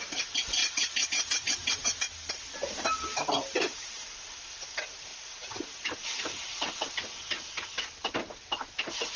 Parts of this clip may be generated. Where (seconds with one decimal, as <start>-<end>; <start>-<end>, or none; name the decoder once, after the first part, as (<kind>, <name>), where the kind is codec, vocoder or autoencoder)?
none

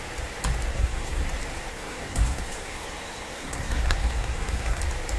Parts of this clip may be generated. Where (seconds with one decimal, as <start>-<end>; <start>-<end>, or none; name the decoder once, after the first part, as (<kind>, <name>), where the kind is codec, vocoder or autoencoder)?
0.7-1.2 (codec, SNAC); 1.7-4.8

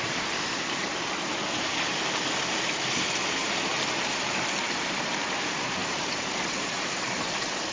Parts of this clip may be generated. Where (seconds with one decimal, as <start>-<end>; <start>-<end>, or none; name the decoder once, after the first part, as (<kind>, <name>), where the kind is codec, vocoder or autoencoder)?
0.0-1.7 (vocoder, BigVGAN v2); 2.3-3.7; 4.5-7.7